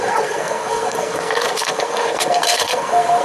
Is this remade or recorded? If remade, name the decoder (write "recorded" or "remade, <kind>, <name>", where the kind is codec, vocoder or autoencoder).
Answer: remade, codec, SNAC